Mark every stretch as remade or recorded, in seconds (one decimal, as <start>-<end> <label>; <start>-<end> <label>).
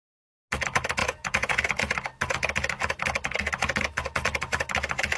0.0-1.0 recorded; 1.0-1.6 remade; 1.6-5.2 recorded